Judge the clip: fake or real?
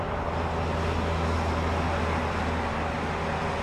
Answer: real